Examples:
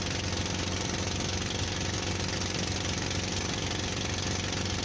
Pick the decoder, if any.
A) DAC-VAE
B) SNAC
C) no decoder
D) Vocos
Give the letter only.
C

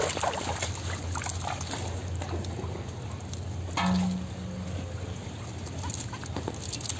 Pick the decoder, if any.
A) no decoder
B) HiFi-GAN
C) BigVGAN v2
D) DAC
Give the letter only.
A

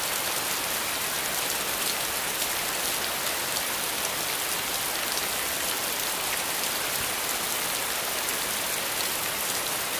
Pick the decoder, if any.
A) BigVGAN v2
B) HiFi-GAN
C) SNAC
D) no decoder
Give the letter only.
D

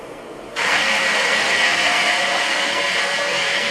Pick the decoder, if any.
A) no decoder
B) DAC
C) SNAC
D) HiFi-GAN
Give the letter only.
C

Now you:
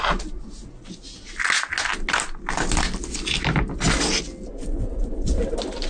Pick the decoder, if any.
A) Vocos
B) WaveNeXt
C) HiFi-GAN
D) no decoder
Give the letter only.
D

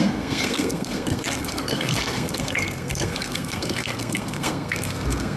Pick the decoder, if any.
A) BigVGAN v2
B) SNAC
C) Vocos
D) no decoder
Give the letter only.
B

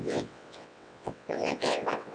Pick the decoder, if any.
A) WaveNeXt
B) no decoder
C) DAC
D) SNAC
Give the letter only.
A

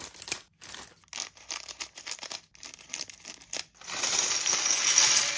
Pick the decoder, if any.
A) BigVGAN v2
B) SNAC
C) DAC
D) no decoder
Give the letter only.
D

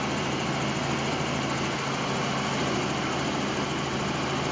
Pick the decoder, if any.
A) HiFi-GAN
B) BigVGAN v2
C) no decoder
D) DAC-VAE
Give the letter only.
C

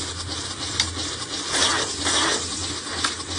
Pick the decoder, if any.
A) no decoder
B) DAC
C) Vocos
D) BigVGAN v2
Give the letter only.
A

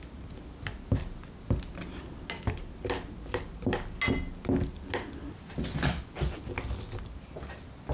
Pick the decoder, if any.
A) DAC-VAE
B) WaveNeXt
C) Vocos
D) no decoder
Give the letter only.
D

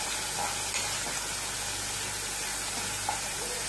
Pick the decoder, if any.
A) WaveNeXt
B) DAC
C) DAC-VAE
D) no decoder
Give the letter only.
D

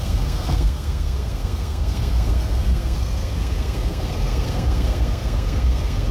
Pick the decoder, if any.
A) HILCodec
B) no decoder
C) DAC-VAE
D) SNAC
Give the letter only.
D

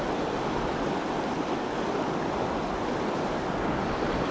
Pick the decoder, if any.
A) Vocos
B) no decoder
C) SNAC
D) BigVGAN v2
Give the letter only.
B